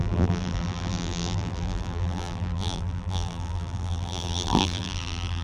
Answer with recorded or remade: remade